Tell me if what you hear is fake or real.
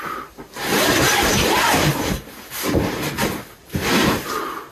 fake